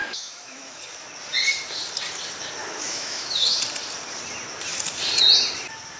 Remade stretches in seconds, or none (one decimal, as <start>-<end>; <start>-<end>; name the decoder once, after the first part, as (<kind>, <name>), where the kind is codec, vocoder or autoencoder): 0.0-0.8 (autoencoder, DAC-VAE); 2.6-3.6